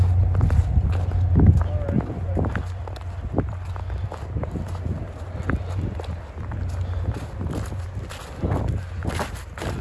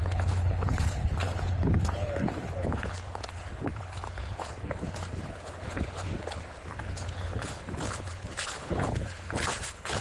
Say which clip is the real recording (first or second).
first